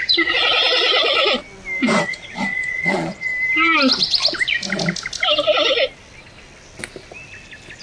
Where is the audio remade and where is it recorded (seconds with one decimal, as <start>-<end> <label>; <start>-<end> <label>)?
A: 0.0-1.2 remade; 1.2-2.0 recorded; 2.0-3.3 remade; 3.3-7.8 recorded

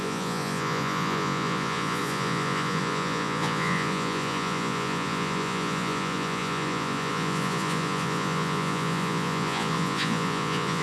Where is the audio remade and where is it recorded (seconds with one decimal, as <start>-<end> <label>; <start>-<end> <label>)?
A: 0.0-10.8 remade

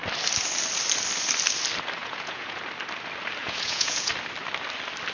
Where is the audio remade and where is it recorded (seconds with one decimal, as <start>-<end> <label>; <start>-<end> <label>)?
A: 0.0-2.0 recorded; 2.0-2.6 remade; 2.6-3.4 recorded; 3.4-4.1 remade; 4.1-5.1 recorded

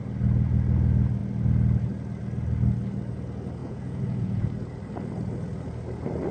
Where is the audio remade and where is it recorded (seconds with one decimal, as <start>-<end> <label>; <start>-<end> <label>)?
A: 0.0-3.6 recorded; 3.6-4.5 remade; 4.5-6.3 recorded